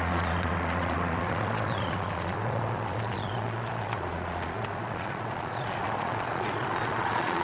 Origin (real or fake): fake